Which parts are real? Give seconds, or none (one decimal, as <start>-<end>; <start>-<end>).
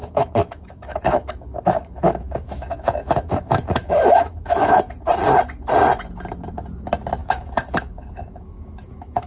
4.7-7.2